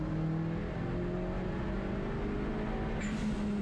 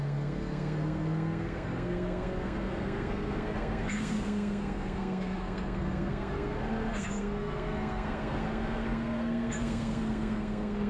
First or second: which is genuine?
first